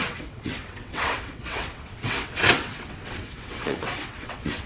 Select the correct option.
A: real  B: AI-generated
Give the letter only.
B